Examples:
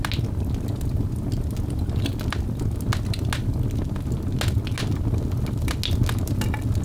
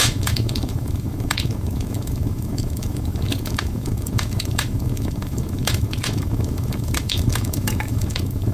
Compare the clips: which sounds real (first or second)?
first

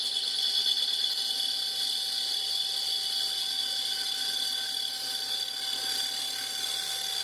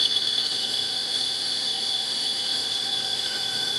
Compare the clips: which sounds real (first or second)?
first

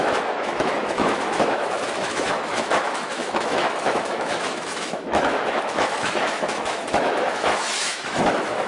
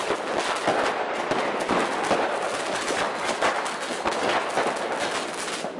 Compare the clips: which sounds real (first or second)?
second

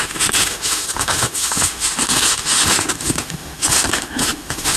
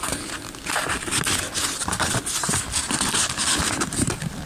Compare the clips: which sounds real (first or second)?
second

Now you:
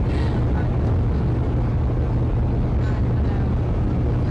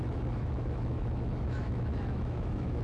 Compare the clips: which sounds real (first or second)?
first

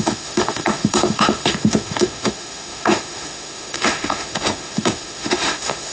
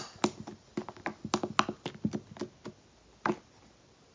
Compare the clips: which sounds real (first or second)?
second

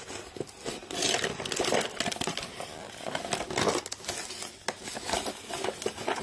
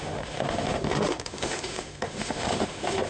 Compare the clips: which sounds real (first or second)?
first